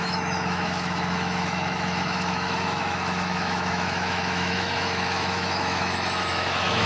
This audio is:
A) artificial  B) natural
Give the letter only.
A